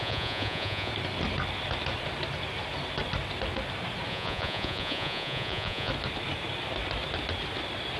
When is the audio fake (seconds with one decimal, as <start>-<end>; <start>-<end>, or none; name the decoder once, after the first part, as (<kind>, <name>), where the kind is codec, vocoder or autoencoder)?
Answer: 0.0-0.9 (vocoder, Vocos); 4.1-5.9